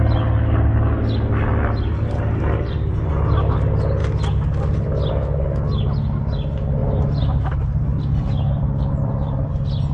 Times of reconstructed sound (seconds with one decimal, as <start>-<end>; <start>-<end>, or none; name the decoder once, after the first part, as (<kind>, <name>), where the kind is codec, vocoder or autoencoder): 1.9-3.1 (vocoder, BigVGAN v2); 6.8-9.5